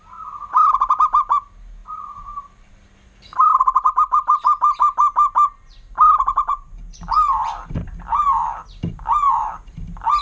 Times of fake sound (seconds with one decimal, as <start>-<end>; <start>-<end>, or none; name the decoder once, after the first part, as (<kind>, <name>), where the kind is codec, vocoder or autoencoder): 1.8-2.7 (vocoder, BigVGAN v2)